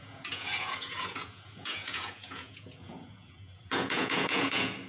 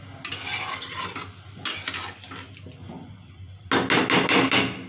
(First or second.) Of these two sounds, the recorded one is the second